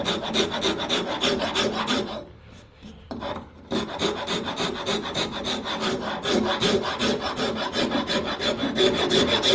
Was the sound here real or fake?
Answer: fake